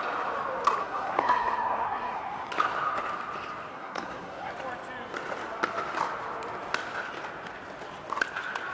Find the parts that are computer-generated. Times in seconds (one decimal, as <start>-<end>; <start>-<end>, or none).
0.8-2.5; 3.7-4.5